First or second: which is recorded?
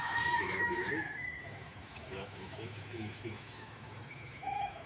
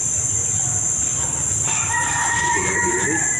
second